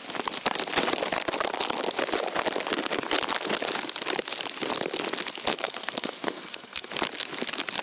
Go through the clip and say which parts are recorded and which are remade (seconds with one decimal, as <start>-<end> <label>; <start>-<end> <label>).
0.0-5.5 recorded; 5.5-6.9 remade; 6.9-7.8 recorded